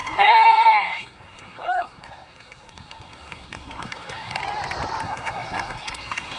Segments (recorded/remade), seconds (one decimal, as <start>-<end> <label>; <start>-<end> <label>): 0.0-4.4 remade; 4.4-5.0 recorded; 5.0-6.4 remade